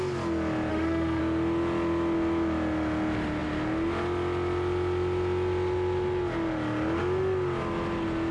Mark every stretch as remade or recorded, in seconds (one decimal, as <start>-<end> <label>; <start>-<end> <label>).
0.0-0.7 recorded; 0.7-1.2 remade; 1.2-8.3 recorded